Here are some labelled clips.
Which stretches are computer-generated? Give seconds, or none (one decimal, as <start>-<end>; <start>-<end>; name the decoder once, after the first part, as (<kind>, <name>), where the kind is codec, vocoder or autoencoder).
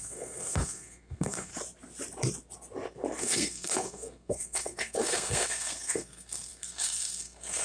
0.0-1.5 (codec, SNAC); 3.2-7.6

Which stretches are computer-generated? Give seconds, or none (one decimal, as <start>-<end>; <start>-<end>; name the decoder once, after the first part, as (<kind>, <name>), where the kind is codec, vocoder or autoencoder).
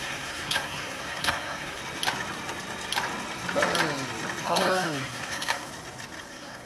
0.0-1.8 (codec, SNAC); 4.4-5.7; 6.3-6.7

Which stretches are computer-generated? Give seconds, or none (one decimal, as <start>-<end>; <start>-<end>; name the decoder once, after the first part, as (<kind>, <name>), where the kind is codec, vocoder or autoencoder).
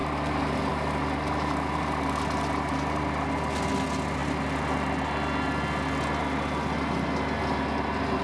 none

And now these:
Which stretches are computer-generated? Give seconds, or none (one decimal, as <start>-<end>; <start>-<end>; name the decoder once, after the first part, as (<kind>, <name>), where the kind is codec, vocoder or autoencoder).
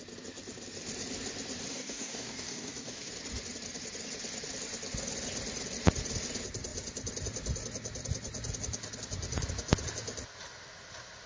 1.7-3.1 (codec, DAC)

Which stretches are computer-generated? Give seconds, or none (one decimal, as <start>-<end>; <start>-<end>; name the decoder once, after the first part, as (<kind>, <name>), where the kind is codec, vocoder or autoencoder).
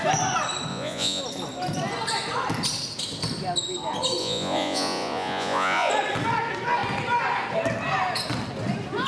0.7-1.2 (vocoder, Vocos); 4.2-5.9